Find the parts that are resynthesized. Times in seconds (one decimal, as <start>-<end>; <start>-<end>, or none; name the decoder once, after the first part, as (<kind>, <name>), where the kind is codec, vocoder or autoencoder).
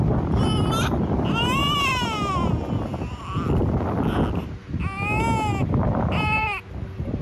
0.0-2.9 (vocoder, BigVGAN v2); 5.6-7.2